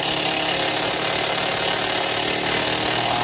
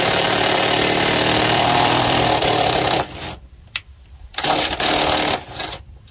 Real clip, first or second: first